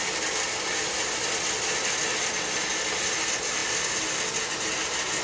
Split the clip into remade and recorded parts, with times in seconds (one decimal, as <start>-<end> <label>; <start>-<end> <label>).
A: 0.0-5.2 recorded